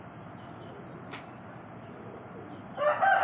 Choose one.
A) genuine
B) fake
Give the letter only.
A